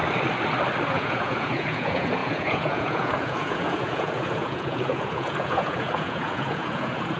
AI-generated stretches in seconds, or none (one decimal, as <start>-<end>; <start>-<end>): 0.9-7.2